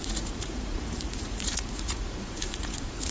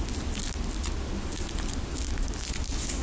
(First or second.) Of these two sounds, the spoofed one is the first